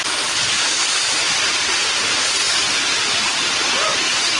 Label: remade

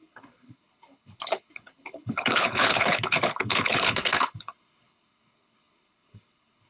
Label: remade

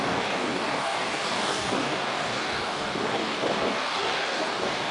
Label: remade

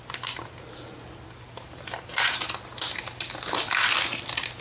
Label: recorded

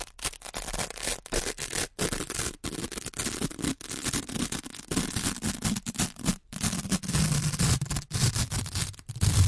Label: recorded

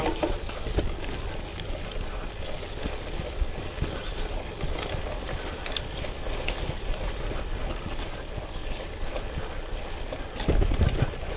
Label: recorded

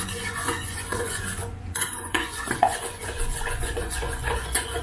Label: remade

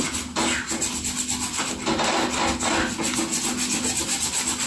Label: recorded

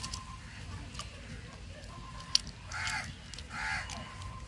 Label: recorded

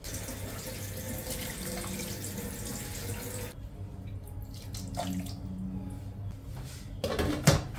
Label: recorded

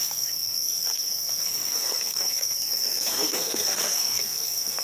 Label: remade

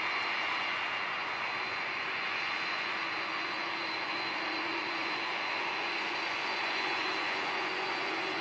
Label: remade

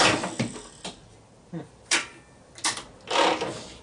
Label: recorded